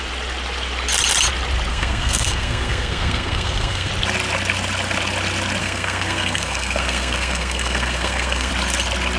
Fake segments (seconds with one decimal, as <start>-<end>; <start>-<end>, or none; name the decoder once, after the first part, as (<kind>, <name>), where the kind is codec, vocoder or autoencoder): 1.7-3.9 (codec, SNAC); 5.6-8.5